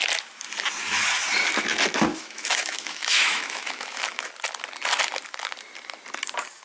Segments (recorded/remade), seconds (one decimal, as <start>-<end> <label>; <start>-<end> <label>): 0.0-2.1 recorded; 2.1-4.3 remade; 4.3-6.6 recorded